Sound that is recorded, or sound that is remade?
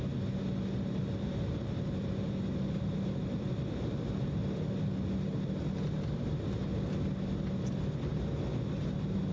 recorded